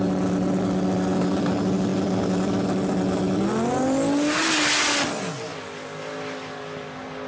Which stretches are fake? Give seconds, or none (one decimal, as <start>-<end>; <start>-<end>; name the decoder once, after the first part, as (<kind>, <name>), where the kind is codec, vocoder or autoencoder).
none